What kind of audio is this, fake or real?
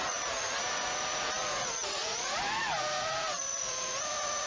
fake